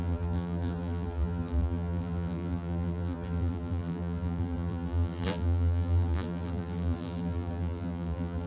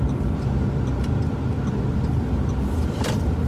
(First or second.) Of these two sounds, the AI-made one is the first